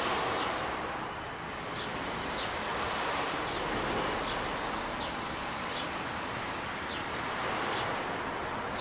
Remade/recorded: recorded